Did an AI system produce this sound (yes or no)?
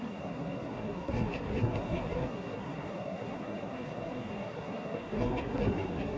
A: yes